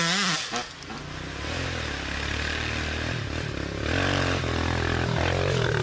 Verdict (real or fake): real